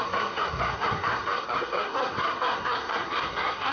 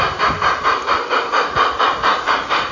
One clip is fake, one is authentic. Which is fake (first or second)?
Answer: first